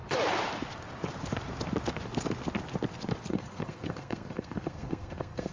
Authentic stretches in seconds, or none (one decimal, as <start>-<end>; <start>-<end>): 0.0-3.3